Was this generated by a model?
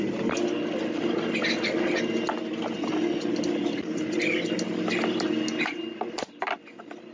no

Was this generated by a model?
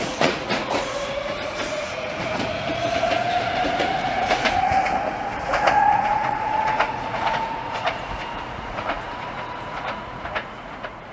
yes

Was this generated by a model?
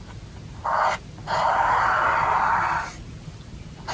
no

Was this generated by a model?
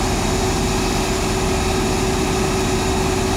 no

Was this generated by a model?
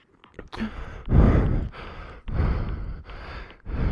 no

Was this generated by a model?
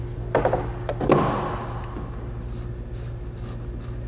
no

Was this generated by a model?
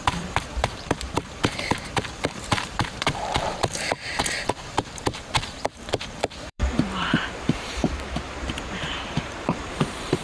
yes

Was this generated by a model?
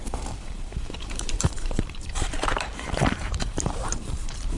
yes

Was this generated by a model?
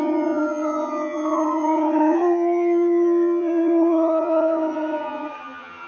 yes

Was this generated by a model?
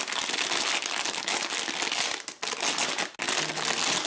no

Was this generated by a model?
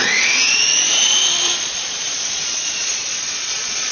yes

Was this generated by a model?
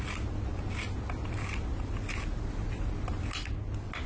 no